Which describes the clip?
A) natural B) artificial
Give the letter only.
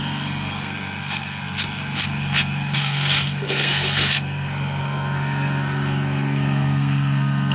B